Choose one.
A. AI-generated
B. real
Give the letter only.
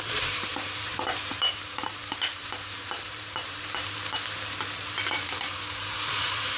A